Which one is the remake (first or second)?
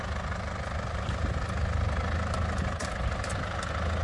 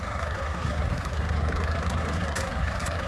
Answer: second